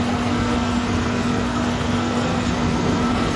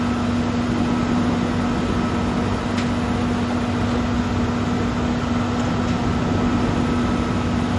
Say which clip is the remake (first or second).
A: first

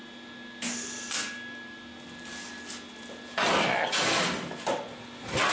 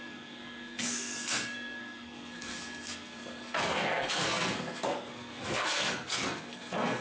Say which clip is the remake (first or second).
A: second